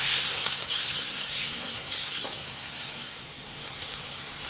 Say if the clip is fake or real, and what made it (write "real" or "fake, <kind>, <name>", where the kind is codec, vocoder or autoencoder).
fake, codec, SNAC